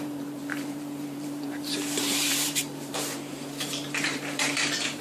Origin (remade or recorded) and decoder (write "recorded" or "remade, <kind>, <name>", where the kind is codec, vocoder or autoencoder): remade, vocoder, BigVGAN v2